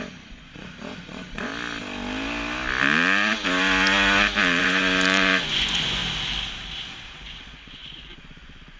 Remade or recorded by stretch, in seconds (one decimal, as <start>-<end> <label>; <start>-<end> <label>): 0.0-1.5 remade; 1.5-4.6 recorded; 4.6-6.0 remade; 6.0-7.1 recorded; 7.1-8.8 remade